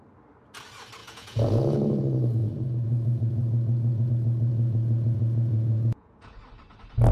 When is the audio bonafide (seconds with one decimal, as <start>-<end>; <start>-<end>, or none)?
0.0-1.0; 2.0-2.4; 4.1-4.5; 6.4-7.1